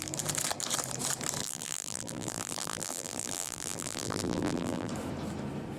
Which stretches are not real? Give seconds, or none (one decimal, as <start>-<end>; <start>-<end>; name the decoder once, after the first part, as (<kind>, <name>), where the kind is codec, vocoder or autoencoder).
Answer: 1.4-4.9 (vocoder, BigVGAN v2)